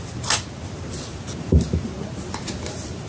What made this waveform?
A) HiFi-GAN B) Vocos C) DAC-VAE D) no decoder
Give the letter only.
D